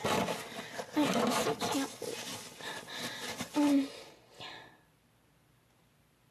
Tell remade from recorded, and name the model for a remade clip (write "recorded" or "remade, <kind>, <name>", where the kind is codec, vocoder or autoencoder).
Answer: recorded